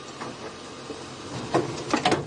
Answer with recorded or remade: recorded